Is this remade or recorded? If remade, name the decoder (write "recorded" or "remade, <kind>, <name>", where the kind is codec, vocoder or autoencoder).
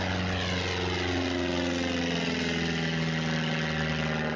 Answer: recorded